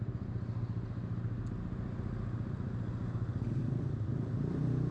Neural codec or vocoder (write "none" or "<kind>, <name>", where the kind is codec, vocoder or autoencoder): none